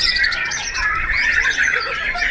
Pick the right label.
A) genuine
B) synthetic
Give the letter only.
B